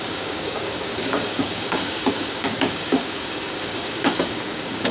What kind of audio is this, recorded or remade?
remade